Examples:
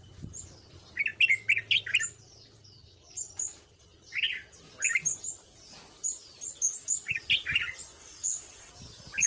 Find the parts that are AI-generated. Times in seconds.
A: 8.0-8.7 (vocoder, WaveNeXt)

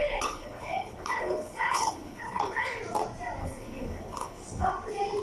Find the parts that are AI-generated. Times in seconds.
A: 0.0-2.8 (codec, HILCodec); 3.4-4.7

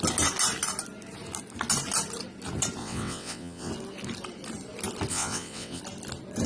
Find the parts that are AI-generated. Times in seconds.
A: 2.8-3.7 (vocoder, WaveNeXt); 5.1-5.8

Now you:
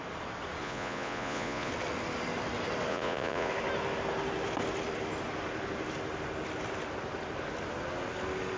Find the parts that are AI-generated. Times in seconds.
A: 0.6-1.7 (vocoder, Vocos); 2.9-3.5

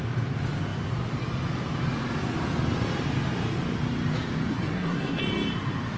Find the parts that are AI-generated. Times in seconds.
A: 4.5-5.2 (codec, SNAC)